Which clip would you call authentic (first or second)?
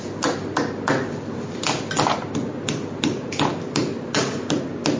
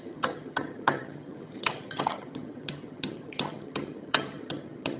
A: first